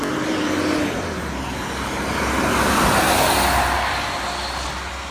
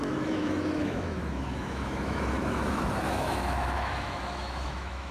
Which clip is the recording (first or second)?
first